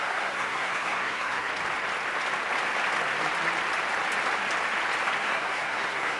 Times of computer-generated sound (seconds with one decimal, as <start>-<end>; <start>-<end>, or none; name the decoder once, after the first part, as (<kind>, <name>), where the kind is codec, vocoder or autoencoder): 0.0-1.5 (codec, SNAC); 5.2-6.2

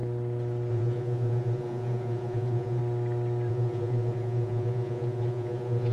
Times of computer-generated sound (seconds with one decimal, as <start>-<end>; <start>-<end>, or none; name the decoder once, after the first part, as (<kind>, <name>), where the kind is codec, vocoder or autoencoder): 0.7-2.8 (vocoder, Vocos); 3.5-5.9

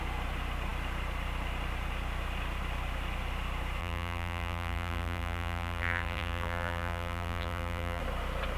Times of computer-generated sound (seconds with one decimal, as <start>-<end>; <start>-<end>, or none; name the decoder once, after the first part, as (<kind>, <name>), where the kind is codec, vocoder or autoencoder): 3.8-8.0 (vocoder, BigVGAN v2)

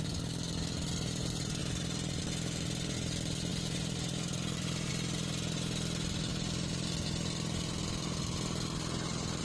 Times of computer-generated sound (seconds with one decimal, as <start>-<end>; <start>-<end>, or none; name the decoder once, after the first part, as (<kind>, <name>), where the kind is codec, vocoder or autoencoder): 1.6-2.2 (vocoder, BigVGAN v2); 3.5-4.9

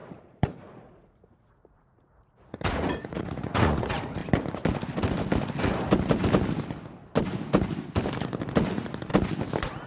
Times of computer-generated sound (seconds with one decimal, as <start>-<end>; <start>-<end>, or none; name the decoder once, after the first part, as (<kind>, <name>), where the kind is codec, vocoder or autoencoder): 0.0-4.2 (vocoder, Vocos); 8.7-9.1

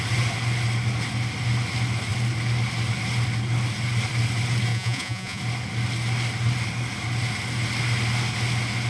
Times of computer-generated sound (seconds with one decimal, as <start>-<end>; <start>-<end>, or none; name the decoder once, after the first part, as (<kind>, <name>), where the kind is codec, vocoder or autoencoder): 4.7-5.4 (vocoder, Vocos)

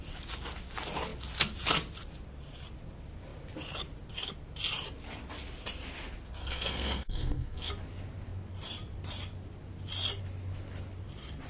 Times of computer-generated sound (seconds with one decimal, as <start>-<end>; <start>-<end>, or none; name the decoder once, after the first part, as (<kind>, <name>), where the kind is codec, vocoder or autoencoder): 6.4-7.7 (codec, SNAC)

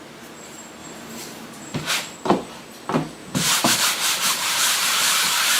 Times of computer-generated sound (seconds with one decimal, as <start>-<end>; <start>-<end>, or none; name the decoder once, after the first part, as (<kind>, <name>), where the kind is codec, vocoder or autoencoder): 0.8-1.9 (vocoder, BigVGAN v2); 3.2-5.6